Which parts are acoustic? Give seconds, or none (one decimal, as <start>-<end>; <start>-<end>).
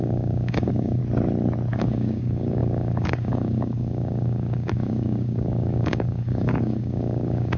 1.0-1.7